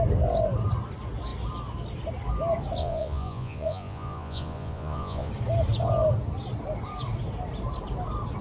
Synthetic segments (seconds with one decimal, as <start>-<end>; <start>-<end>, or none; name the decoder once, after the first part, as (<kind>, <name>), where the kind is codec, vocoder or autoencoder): 2.8-5.3 (vocoder, Vocos)